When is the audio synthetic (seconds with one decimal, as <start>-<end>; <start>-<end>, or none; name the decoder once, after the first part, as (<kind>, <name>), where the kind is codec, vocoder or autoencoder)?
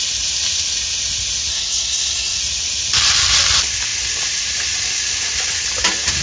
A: 1.5-2.4 (codec, SNAC)